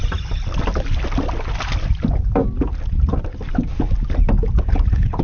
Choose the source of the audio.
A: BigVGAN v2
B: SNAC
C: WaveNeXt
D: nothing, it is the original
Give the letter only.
D